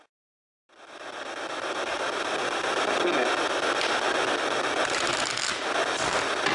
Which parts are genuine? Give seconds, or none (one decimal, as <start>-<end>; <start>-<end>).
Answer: 0.0-6.5